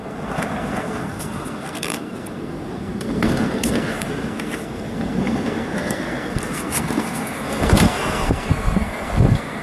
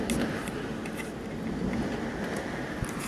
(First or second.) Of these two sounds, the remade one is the first